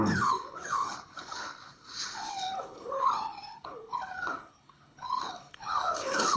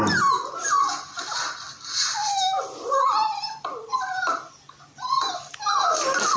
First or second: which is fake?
first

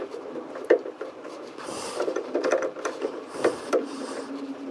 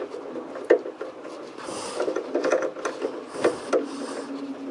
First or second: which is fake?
first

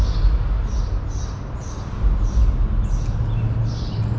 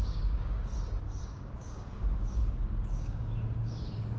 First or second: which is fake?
second